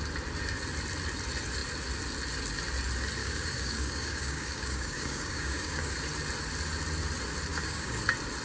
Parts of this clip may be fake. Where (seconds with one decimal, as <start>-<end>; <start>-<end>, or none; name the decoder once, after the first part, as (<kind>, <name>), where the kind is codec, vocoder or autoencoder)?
3.2-5.9 (codec, DAC); 7.5-8.0